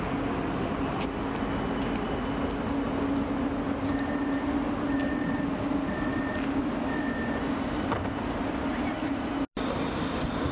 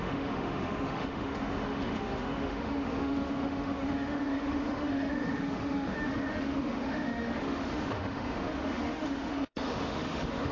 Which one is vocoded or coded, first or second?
second